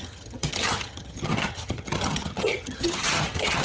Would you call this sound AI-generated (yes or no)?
yes